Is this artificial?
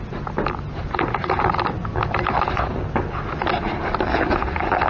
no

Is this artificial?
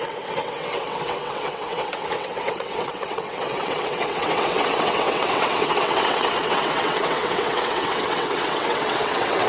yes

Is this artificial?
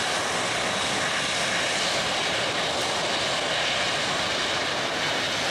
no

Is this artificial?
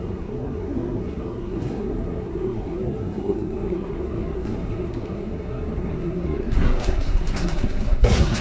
yes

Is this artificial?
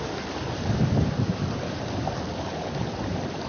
no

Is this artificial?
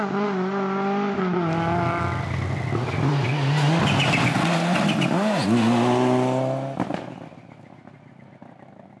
no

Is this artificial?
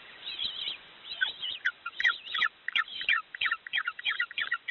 yes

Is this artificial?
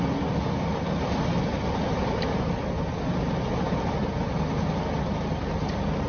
no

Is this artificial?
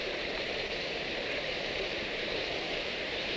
yes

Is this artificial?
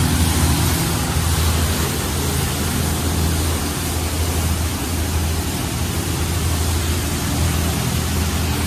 no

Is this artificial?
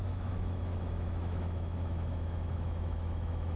yes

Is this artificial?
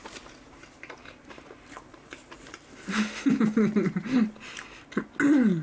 no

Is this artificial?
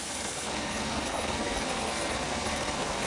yes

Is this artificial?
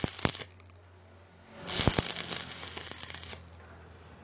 no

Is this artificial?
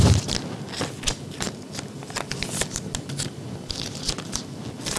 no